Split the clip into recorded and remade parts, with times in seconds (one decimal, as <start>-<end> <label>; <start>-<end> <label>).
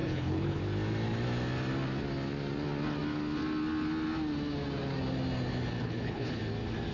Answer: 0.0-0.6 remade; 0.6-5.8 recorded; 5.8-6.4 remade; 6.4-6.9 recorded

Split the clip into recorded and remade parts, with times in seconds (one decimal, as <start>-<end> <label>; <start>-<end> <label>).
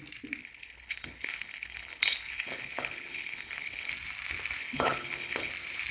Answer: 0.0-0.4 recorded; 0.4-3.9 remade; 3.9-4.6 recorded; 4.6-5.5 remade; 5.5-5.9 recorded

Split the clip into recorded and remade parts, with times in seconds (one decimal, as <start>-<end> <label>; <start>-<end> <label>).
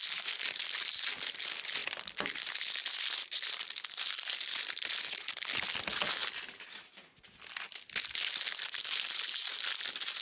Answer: 0.0-10.2 recorded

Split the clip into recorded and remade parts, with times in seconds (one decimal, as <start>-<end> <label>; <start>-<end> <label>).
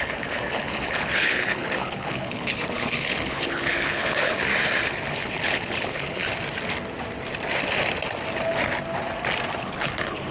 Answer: 0.0-4.5 remade; 4.5-5.1 recorded; 5.1-6.2 remade; 6.2-9.6 recorded; 9.6-10.3 remade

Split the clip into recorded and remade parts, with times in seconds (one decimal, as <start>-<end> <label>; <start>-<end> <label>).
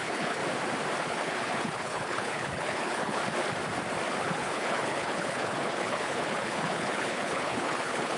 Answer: 0.0-0.4 remade; 0.4-1.0 recorded; 1.0-3.2 remade; 3.2-4.2 recorded; 4.2-8.2 remade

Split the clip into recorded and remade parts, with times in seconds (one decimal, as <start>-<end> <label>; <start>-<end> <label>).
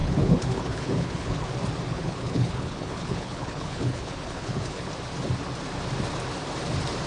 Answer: 0.0-1.5 remade; 1.5-1.9 recorded; 1.9-4.9 remade; 4.9-7.1 recorded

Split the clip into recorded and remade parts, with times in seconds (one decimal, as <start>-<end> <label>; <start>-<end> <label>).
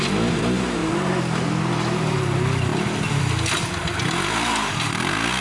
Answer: 0.0-5.4 recorded